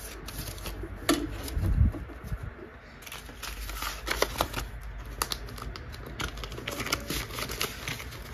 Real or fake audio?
real